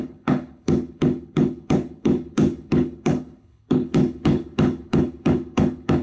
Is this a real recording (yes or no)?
no